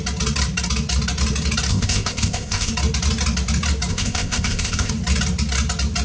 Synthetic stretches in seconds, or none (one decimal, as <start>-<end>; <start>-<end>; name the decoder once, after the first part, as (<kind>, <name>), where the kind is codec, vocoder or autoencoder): 1.7-2.7 (codec, ZipCodec); 3.9-4.9